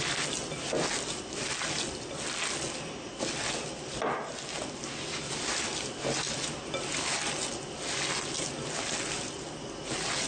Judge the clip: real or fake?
real